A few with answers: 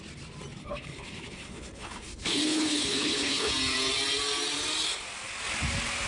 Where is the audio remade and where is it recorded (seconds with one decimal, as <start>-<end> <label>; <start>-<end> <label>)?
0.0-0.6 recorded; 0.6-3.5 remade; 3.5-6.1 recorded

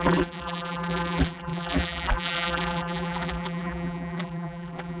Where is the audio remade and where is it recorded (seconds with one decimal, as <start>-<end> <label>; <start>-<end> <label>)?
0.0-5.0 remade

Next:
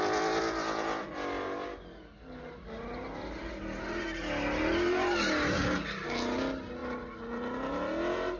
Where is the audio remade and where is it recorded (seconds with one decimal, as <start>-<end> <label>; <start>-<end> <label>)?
0.0-8.4 recorded

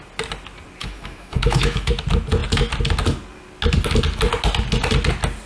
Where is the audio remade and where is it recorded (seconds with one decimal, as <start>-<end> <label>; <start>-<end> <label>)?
0.0-0.8 recorded; 0.8-1.9 remade; 1.9-5.5 recorded